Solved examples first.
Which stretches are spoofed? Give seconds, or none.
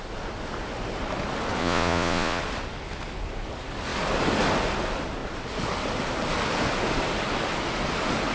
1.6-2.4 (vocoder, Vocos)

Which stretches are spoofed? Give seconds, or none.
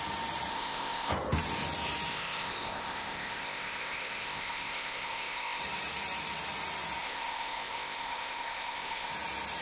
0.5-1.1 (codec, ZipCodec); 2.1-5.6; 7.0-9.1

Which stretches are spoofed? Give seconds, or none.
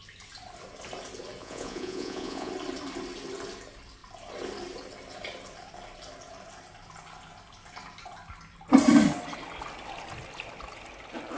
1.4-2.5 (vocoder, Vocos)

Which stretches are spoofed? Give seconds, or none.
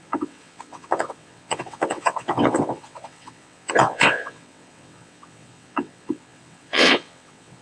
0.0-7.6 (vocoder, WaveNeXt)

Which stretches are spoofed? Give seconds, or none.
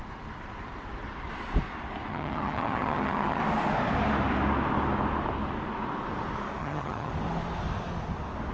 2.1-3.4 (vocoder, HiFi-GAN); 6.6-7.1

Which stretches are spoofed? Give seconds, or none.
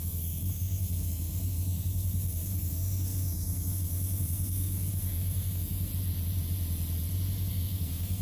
0.0-5.9 (codec, SNAC); 7.5-8.2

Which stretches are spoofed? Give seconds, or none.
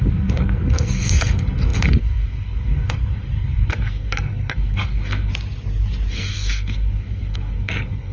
0.0-5.3 (codec, SNAC); 6.1-8.1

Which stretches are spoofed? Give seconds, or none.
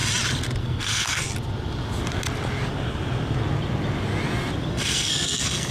0.6-1.3 (codec, SNAC); 4.7-5.7